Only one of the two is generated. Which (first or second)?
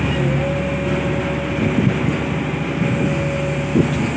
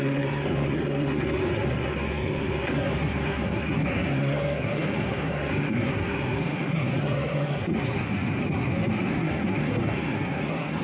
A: second